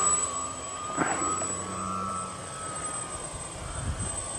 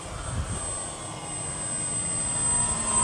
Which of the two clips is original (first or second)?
second